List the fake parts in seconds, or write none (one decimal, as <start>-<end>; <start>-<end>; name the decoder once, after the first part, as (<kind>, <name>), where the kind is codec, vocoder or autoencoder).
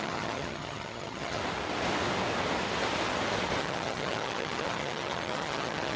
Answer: 0.0-1.4 (vocoder, HiFi-GAN); 3.6-6.0